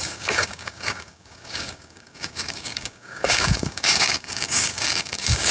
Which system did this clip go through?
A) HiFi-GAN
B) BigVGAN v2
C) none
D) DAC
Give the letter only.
D